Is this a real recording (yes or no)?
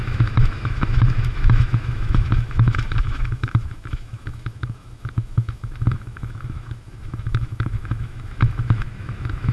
no